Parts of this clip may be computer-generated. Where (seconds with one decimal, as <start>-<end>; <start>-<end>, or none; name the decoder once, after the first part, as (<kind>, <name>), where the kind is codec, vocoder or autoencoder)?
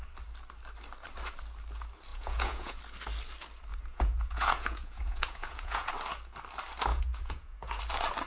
2.1-2.8 (vocoder, Vocos); 3.7-5.9; 6.9-7.8